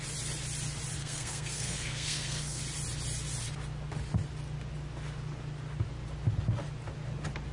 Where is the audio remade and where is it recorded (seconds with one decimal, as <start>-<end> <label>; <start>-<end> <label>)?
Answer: 0.0-1.0 recorded; 1.0-2.6 remade; 2.6-7.5 recorded

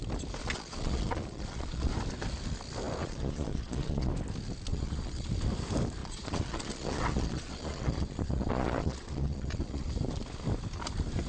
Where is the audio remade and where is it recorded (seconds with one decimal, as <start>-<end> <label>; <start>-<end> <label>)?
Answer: 0.0-0.4 recorded; 0.4-1.9 remade; 1.9-3.0 recorded; 3.0-4.1 remade; 4.1-4.7 recorded; 4.7-5.3 remade; 5.3-6.0 recorded; 6.0-9.9 remade; 9.9-11.3 recorded

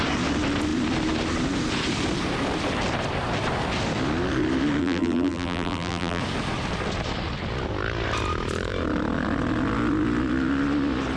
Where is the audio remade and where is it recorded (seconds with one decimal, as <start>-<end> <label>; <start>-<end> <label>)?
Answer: 0.0-4.8 recorded; 4.8-6.2 remade; 6.2-11.2 recorded